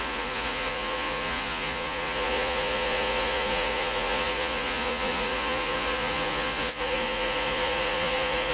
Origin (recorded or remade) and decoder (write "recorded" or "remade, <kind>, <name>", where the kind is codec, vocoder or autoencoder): remade, vocoder, Vocos